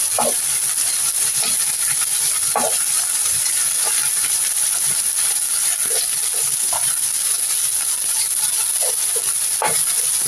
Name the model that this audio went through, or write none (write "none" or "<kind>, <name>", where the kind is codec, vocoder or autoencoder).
none